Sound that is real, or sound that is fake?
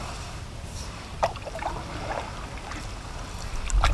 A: real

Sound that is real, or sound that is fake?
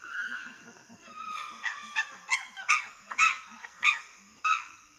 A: fake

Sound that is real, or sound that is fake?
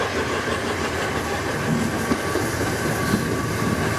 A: real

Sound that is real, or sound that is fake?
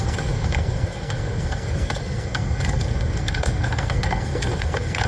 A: fake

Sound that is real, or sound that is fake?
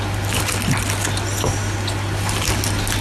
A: real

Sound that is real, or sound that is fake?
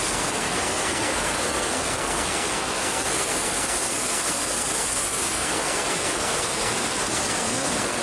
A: fake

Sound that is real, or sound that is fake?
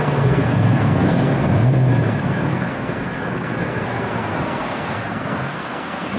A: fake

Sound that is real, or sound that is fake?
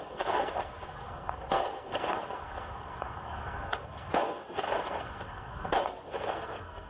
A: fake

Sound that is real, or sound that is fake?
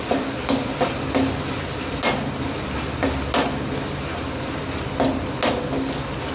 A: real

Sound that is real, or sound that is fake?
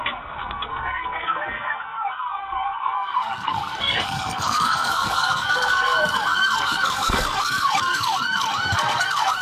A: fake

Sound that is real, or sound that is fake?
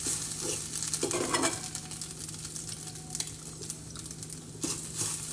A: real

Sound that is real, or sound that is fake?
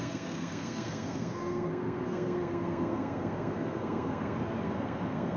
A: fake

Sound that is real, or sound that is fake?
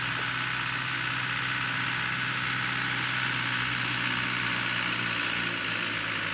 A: real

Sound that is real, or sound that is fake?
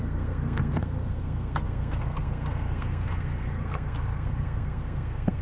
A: fake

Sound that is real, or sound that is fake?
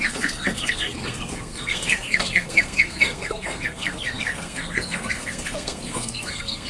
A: fake